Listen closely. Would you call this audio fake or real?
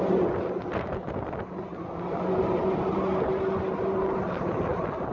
real